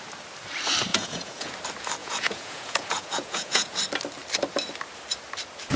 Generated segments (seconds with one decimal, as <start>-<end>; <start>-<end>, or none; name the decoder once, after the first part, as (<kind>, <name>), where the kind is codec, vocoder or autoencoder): 0.9-1.5 (vocoder, Vocos); 2.0-3.8